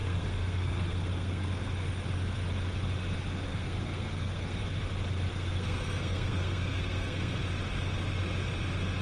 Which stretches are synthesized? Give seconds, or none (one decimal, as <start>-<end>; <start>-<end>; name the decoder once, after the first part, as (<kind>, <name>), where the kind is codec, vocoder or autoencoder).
0.0-1.5 (codec, SNAC); 3.5-4.6; 5.3-7.4

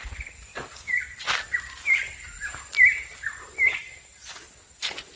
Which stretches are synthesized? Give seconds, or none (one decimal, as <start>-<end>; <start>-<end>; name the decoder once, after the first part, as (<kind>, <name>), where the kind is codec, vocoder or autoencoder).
none

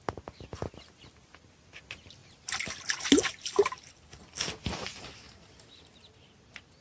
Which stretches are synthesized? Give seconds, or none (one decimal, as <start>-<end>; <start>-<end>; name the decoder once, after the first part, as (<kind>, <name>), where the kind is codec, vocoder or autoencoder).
none

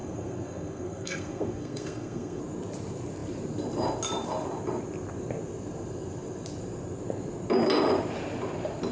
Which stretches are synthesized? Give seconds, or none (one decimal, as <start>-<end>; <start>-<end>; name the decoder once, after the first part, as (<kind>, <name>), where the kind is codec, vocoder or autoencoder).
0.0-2.4 (codec, SNAC)